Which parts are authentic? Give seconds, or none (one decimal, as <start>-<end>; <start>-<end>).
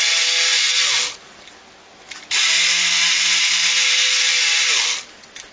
0.0-5.5